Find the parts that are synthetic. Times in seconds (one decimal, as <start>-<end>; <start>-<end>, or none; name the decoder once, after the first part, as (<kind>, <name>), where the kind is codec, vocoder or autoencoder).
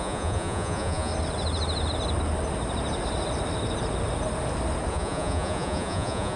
0.0-1.1 (vocoder, Vocos); 4.9-6.4